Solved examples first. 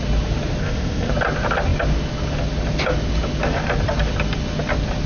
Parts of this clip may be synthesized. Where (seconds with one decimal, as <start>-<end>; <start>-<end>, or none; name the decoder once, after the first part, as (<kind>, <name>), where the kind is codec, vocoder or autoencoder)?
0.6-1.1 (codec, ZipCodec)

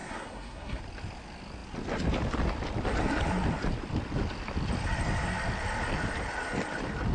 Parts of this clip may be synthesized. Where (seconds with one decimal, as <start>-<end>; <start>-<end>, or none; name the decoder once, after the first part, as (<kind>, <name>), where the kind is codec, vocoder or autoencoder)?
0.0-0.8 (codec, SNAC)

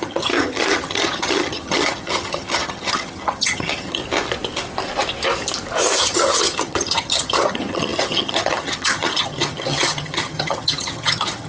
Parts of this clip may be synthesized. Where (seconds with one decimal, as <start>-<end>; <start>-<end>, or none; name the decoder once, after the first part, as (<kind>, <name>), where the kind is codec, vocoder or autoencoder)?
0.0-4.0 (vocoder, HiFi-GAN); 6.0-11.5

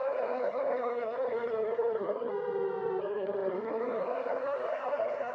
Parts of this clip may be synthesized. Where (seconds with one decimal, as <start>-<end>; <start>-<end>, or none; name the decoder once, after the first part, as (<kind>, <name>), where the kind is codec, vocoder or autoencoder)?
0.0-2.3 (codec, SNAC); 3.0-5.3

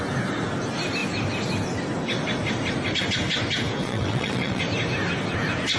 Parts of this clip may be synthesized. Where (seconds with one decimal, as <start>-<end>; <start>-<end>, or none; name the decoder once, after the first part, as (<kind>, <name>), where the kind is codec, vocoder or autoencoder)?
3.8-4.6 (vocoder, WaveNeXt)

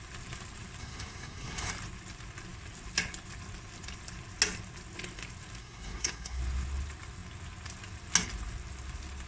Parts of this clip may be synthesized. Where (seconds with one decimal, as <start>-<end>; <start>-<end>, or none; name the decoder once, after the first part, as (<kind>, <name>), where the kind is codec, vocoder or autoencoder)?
0.8-1.7 (codec, SNAC); 5.6-6.4

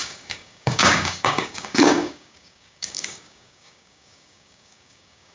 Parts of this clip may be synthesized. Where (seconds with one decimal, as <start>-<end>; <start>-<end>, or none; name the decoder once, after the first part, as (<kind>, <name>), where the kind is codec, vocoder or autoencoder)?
0.0-5.3 (codec, DAC)